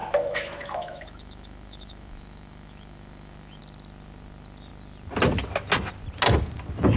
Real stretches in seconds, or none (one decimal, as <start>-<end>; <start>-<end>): 3.6-7.0